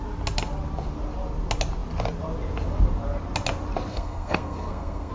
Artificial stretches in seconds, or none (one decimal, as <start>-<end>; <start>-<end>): 3.9-5.1